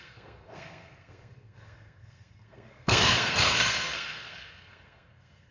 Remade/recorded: remade